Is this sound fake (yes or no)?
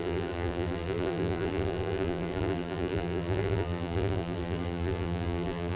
yes